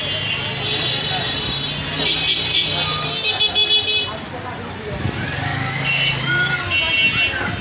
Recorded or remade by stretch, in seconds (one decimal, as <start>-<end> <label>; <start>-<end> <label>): 0.0-5.5 recorded; 5.5-6.2 remade; 6.2-7.6 recorded